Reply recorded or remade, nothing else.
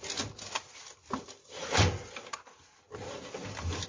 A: recorded